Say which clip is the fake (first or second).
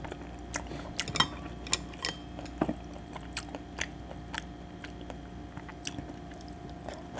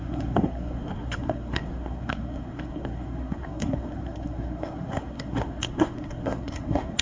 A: second